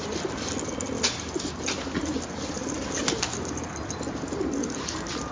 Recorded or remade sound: recorded